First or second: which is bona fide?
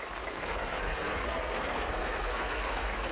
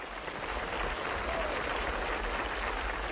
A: second